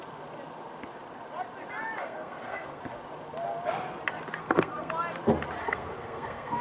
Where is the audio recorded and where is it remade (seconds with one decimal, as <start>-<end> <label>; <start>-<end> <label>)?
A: 0.0-2.0 recorded; 2.0-2.8 remade; 2.8-4.4 recorded; 4.4-4.9 remade; 4.9-5.6 recorded; 5.6-6.6 remade